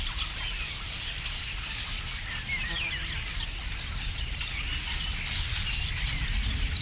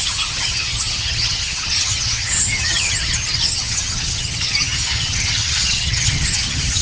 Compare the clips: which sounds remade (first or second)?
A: second